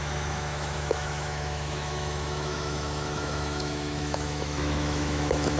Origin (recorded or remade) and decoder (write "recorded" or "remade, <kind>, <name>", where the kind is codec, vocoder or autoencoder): remade, autoencoder, DAC-VAE